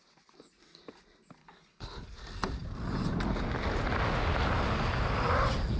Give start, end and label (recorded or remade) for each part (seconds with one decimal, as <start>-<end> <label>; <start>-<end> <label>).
0.0-1.4 recorded; 1.4-2.1 remade; 2.1-5.8 recorded